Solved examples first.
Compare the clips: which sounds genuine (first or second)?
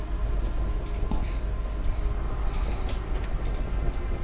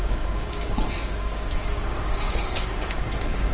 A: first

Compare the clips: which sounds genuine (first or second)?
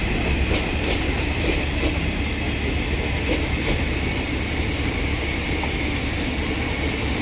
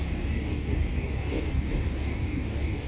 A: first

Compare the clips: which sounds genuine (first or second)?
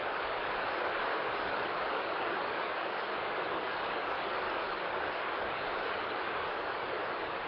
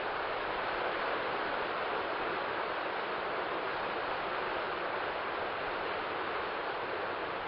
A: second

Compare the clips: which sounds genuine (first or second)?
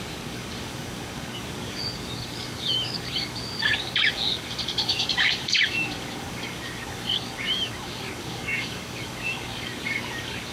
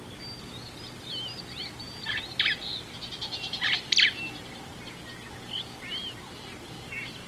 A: second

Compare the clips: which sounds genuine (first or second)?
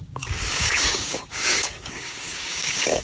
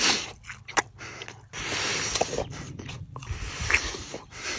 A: second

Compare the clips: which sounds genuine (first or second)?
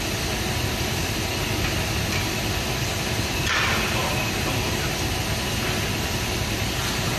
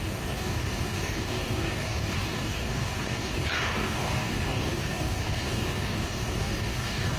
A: first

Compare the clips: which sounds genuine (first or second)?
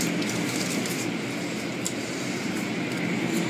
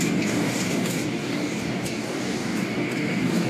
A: first